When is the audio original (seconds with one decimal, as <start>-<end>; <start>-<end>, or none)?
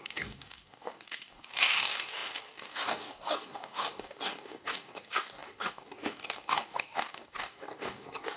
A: none